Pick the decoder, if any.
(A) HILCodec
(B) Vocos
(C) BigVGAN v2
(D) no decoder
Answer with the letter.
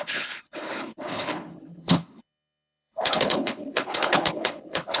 A